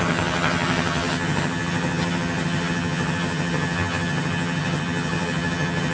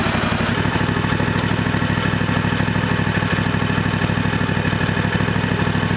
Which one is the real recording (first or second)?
second